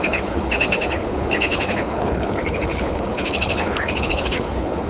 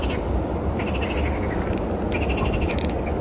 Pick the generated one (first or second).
first